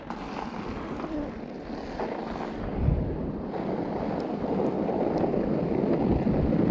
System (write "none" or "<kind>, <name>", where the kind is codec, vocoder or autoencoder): none